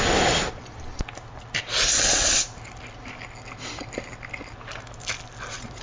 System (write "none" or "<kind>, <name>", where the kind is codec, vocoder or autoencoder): none